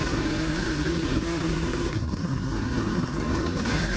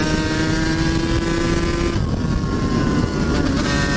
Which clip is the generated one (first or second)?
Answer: first